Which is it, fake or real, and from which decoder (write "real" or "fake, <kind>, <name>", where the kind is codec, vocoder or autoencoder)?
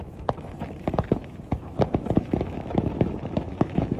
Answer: fake, autoencoder, DAC-VAE